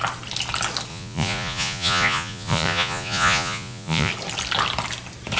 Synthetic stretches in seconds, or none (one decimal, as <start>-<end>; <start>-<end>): 0.9-4.1